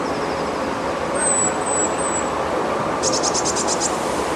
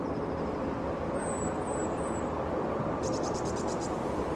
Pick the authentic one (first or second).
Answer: first